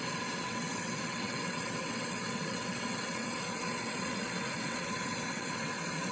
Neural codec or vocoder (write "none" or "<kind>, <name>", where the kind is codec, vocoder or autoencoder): vocoder, WaveNeXt